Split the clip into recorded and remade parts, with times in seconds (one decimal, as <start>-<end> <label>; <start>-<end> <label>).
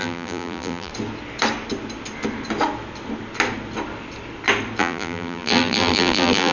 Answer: 0.0-0.9 remade; 0.9-4.8 recorded; 4.8-6.5 remade